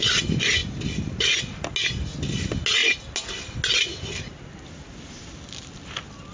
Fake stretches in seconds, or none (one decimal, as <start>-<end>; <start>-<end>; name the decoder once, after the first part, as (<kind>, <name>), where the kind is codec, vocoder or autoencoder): none